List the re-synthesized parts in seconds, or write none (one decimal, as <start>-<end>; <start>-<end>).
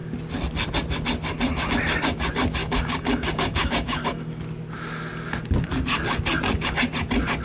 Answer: 2.6-4.4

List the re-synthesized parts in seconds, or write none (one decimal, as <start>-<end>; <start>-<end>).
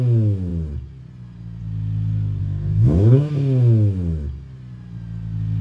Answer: 2.4-3.3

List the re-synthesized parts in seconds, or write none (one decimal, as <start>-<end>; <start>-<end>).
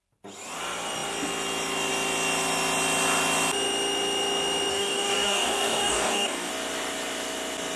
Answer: 4.7-6.5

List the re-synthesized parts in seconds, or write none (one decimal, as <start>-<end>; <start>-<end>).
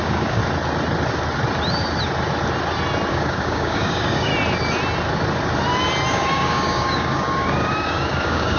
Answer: 0.0-0.4; 3.1-4.3; 6.1-8.6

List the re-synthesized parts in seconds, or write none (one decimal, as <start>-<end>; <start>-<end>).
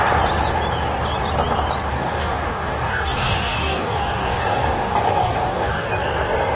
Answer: 1.9-5.9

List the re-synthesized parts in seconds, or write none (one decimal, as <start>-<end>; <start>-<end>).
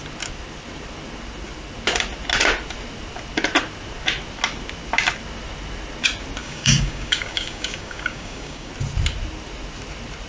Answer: 6.4-8.7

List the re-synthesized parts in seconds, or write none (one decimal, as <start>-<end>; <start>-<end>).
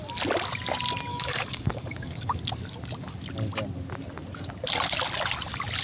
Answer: 1.1-2.4